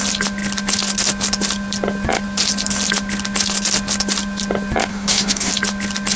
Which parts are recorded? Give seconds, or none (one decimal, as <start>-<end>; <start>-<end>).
0.0-4.9; 5.5-6.2